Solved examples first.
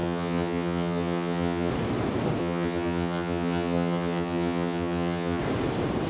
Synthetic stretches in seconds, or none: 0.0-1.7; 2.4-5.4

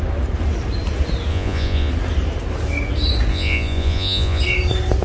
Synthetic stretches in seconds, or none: 1.3-1.9; 3.3-4.4

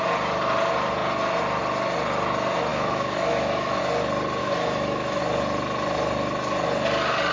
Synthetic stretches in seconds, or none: 2.7-3.8; 4.4-5.2

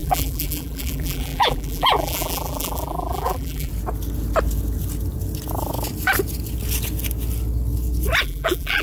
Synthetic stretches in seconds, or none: 0.0-3.7; 8.2-8.8

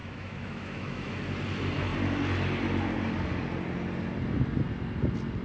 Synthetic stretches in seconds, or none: 0.0-1.1

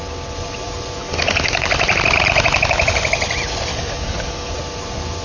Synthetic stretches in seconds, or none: 1.0-1.7; 3.7-4.5